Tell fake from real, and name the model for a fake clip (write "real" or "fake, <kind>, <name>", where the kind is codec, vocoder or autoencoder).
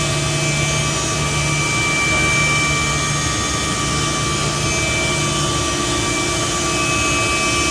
real